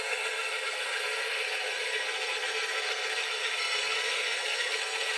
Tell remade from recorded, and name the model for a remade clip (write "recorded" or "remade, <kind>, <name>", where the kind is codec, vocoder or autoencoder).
remade, codec, SNAC